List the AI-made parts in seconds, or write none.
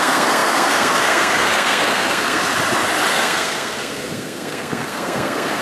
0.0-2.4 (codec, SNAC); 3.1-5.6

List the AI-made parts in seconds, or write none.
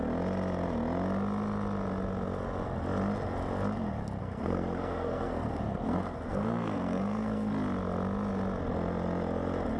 4.2-7.5 (codec, SNAC)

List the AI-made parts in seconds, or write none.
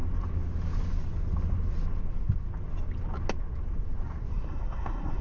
4.3-5.2 (codec, SNAC)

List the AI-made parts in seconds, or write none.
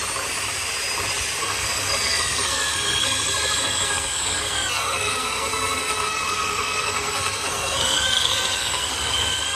1.4-9.5 (codec, SNAC)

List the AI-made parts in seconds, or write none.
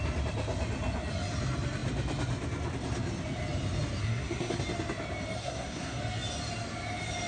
4.0-4.6 (codec, SNAC); 5.4-6.0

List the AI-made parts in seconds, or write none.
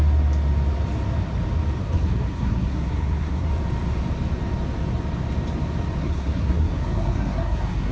1.8-3.5 (codec, SNAC); 6.0-7.9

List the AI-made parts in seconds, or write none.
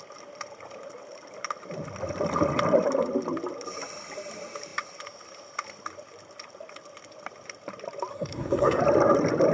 8.1-8.8 (codec, SNAC)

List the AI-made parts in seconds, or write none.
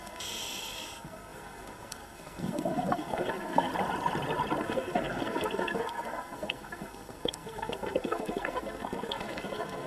0.0-3.7 (codec, SNAC); 4.6-9.9